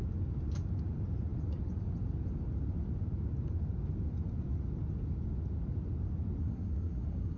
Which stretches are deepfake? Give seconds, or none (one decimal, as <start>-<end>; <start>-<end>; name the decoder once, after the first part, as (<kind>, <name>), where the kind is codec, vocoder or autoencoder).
6.4-7.4 (codec, SNAC)

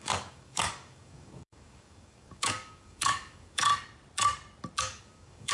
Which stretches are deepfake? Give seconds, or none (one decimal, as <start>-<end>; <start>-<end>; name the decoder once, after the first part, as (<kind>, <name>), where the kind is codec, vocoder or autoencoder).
0.0-3.7 (codec, DAC); 4.8-5.5

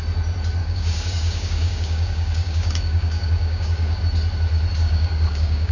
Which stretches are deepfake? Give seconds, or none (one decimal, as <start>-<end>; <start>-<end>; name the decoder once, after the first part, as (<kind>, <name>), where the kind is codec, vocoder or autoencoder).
0.6-4.0 (codec, DAC); 4.8-5.7

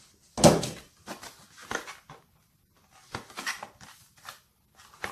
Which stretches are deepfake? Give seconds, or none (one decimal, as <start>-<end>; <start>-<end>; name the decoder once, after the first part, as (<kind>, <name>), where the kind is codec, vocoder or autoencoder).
none